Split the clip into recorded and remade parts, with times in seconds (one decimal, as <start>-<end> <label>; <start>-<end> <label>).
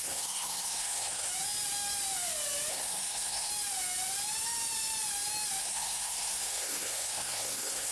0.0-1.3 remade; 1.3-2.7 recorded; 2.7-3.5 remade; 3.5-5.6 recorded; 5.6-7.9 remade